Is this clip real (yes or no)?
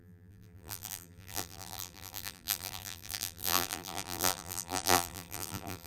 no